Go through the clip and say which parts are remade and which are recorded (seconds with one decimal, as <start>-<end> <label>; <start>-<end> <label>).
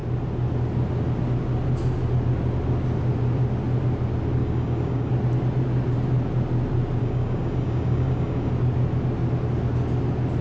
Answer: 0.0-4.4 recorded; 4.4-5.1 remade; 5.1-7.0 recorded; 7.0-8.5 remade; 8.5-10.4 recorded